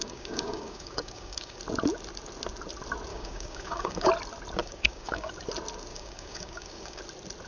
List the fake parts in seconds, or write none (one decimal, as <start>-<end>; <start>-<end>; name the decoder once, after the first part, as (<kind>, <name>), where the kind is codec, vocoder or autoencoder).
0.0-1.6 (codec, DAC); 3.1-4.1; 4.6-5.3; 5.9-7.0